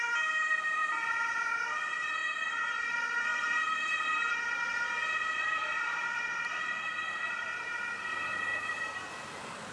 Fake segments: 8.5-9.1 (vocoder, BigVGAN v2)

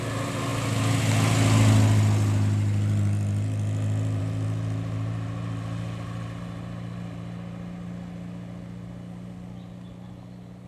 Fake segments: none

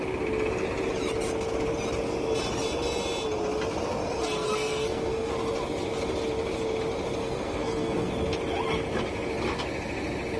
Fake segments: 3.9-5.3 (codec, SNAC); 7.2-8.1

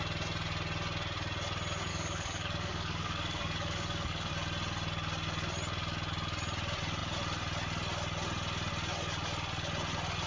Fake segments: 1.9-4.3 (codec, DAC)

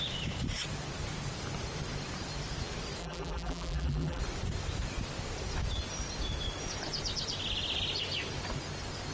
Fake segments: 3.0-4.2 (vocoder, BigVGAN v2)